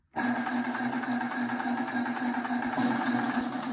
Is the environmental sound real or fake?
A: real